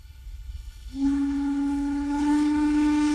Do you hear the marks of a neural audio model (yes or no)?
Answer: yes